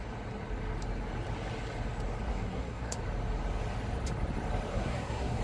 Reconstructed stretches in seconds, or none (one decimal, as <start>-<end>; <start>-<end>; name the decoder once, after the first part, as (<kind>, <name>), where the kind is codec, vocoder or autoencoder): 2.3-3.0 (codec, SNAC); 4.7-5.4